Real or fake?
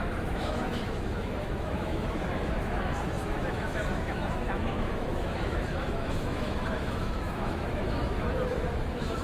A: fake